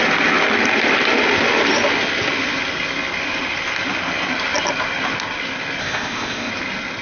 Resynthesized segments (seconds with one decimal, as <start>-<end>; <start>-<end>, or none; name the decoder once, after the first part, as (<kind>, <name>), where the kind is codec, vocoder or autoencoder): 5.8-6.5 (codec, ZipCodec)